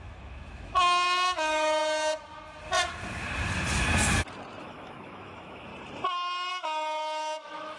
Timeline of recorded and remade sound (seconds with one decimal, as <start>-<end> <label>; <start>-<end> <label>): 0.0-1.8 remade; 1.8-4.6 recorded; 4.6-5.7 remade; 5.7-6.5 recorded; 6.5-7.8 remade